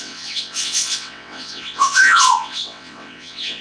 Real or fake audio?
fake